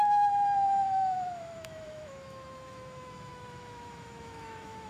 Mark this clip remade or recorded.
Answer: remade